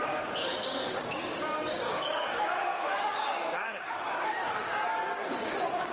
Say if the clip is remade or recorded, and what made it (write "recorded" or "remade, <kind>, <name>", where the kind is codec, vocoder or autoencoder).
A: remade, codec, DAC